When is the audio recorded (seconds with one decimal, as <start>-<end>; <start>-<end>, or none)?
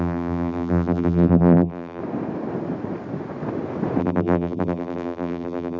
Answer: 2.0-4.0